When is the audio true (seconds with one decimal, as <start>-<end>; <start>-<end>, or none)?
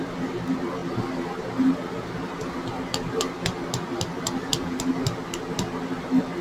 0.0-6.4